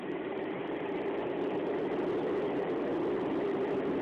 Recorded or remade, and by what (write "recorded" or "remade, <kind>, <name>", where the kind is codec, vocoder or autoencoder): remade, vocoder, BigVGAN v2